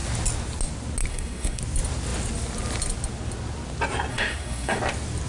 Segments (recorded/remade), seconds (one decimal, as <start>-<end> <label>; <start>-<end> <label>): 0.0-1.1 recorded; 1.1-1.6 remade; 1.6-4.1 recorded; 4.1-4.8 remade; 4.8-5.3 recorded